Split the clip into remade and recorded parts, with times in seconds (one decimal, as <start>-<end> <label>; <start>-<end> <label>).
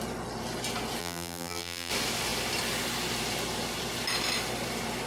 0.0-1.0 recorded; 1.0-1.9 remade; 1.9-5.1 recorded